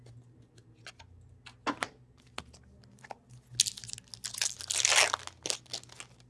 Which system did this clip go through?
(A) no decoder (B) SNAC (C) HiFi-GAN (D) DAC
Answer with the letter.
A